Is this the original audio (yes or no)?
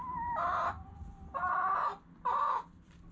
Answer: yes